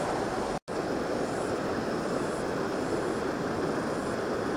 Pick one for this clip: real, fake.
real